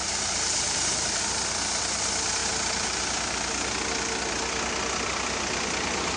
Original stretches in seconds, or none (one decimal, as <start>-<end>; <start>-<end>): 1.2-6.2